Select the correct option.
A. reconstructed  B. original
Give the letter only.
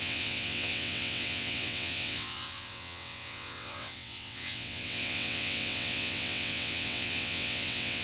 A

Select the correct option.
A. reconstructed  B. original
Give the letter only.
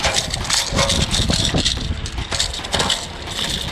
B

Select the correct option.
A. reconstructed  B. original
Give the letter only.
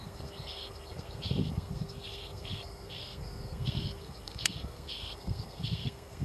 A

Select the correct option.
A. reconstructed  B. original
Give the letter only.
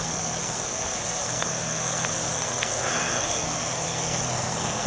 A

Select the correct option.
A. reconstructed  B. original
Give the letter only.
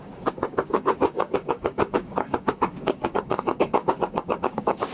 A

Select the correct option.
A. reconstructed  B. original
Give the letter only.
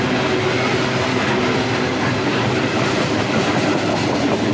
B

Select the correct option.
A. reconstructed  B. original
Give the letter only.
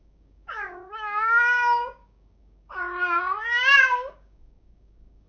A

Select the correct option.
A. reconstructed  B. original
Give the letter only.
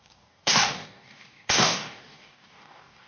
A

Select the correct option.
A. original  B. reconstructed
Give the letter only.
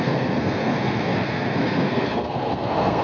B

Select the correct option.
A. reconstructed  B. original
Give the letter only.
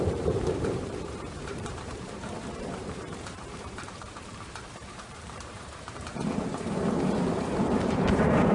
A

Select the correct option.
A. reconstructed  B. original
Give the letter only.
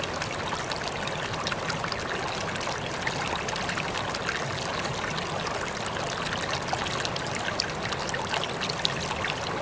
B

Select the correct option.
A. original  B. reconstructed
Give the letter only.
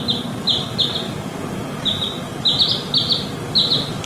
A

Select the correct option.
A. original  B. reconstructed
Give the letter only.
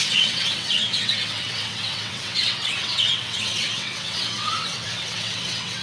B